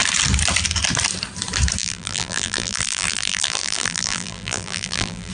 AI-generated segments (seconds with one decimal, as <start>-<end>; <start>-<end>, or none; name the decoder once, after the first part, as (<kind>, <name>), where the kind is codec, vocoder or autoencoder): 1.8-5.3 (vocoder, BigVGAN v2)